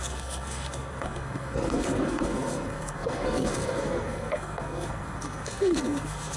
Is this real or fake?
fake